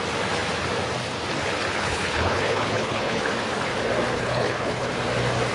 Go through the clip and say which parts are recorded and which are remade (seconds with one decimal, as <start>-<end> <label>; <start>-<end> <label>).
0.0-1.7 recorded; 1.7-3.2 remade; 3.2-4.1 recorded; 4.1-4.9 remade; 4.9-5.5 recorded